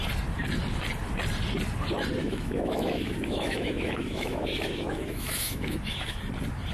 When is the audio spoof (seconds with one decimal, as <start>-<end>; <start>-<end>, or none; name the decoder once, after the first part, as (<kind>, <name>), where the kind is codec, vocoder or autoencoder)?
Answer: 2.2-6.2 (autoencoder, DAC-VAE)